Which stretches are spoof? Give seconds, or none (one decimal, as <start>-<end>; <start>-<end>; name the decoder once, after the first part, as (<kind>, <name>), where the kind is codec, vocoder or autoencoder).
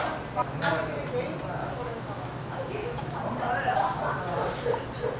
1.6-3.2 (autoencoder, DAC-VAE)